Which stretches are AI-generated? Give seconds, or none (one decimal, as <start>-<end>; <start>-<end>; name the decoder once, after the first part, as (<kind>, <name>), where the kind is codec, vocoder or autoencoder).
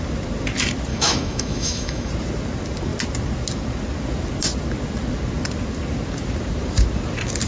0.9-2.1 (autoencoder, DAC-VAE)